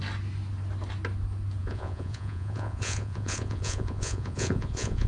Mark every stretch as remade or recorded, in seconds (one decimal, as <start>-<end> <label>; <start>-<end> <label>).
0.0-1.6 recorded; 1.6-5.1 remade